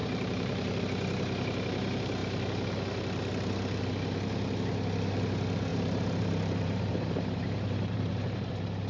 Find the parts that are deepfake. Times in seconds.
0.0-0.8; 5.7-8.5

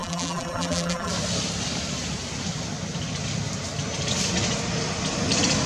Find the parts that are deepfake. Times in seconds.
0.0-1.1

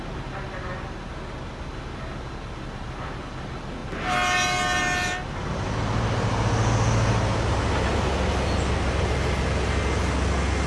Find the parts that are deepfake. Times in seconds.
none

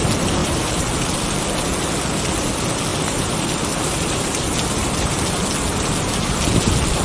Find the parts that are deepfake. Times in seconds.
0.4-1.4; 2.9-5.3